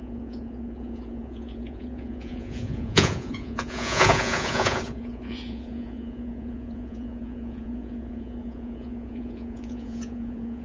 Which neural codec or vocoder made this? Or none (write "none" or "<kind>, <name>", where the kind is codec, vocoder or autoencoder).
vocoder, Vocos